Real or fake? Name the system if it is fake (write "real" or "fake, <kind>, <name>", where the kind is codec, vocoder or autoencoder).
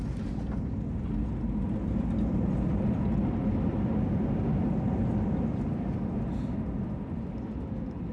real